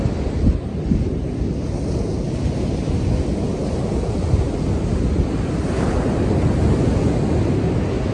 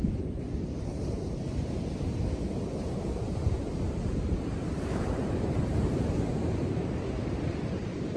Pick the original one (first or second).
first